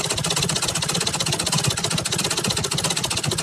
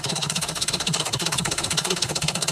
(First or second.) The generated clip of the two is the second